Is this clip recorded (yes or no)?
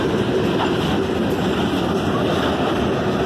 yes